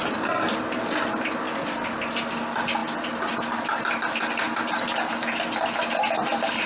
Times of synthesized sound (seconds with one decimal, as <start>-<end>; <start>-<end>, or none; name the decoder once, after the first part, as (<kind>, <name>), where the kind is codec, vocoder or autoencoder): none

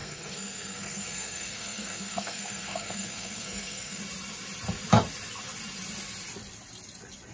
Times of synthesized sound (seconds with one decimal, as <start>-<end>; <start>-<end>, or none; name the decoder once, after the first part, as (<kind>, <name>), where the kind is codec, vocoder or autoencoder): 0.0-4.0 (codec, SNAC)

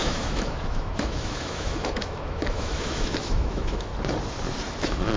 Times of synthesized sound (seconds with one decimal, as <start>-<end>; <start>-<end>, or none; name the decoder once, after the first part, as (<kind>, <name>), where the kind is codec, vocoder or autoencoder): 0.0-3.9 (autoencoder, DAC-VAE); 4.8-5.2

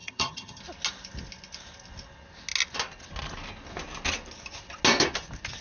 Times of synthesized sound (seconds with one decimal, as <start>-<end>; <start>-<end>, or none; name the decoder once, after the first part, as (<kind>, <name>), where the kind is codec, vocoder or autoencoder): 0.0-0.6 (vocoder, HiFi-GAN)

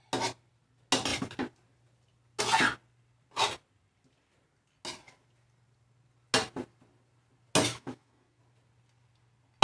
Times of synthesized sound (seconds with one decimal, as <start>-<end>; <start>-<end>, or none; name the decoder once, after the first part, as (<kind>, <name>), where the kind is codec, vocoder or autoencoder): 7.7-8.4 (autoencoder, DAC-VAE)